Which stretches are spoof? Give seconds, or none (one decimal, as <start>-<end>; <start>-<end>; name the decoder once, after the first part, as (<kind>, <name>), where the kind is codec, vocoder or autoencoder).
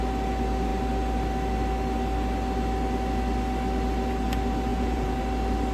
4.7-5.2 (vocoder, Vocos)